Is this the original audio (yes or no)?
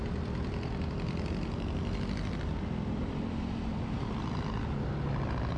no